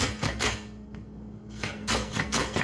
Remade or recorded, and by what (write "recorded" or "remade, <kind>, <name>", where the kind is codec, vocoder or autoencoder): remade, codec, SNAC